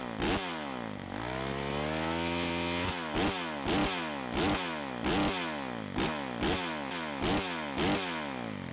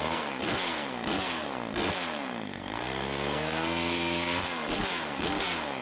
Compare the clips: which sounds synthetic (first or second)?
second